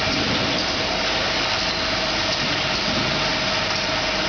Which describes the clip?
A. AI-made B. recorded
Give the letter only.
B